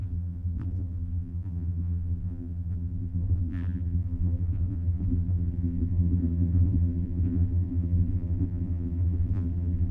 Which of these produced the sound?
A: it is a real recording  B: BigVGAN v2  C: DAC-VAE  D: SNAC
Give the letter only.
B